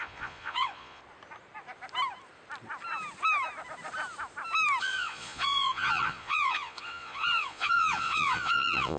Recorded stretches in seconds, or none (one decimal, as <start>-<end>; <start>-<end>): 1.0-4.8